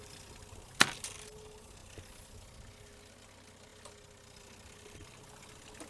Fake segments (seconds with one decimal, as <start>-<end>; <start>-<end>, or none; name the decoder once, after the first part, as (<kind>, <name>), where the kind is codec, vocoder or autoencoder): none